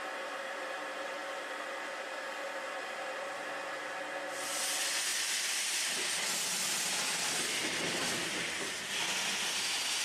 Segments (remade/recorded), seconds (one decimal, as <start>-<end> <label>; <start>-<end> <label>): 0.0-10.0 recorded